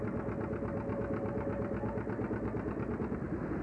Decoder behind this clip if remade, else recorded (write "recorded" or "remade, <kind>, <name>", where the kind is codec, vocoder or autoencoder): recorded